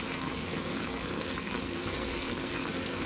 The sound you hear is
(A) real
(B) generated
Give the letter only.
B